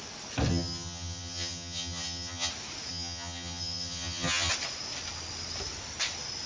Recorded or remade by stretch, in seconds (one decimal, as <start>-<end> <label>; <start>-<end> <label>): 0.0-0.5 recorded; 0.5-2.5 remade; 2.5-2.9 recorded; 2.9-4.5 remade; 4.5-6.5 recorded